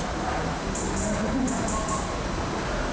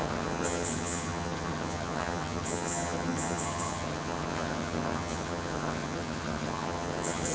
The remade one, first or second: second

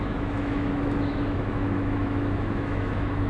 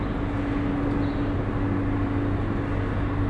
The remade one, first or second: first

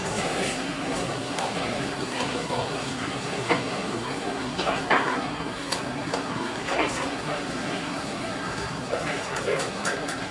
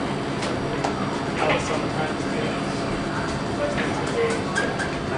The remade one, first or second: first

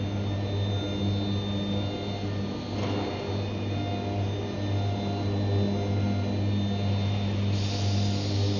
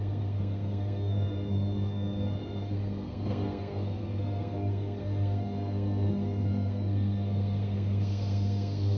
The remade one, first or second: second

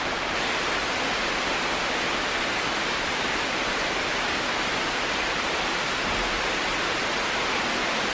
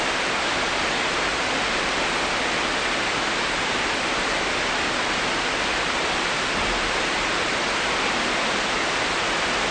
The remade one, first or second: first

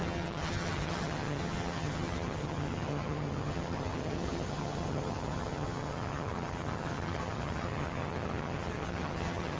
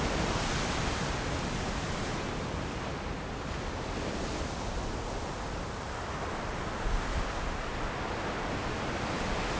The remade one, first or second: first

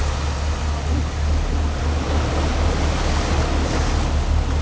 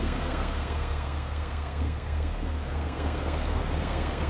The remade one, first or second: second